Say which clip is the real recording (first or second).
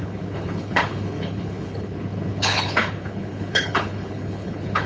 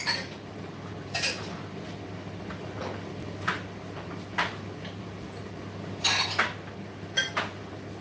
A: second